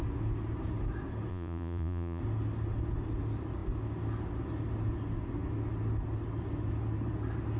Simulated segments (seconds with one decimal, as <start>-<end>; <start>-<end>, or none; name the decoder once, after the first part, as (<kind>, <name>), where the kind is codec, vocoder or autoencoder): 1.3-2.2 (vocoder, Vocos)